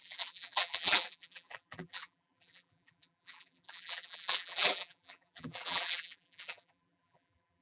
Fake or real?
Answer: fake